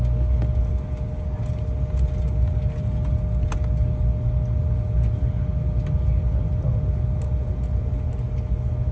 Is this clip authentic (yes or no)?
yes